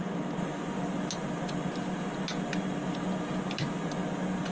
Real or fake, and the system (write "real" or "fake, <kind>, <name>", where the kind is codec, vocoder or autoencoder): real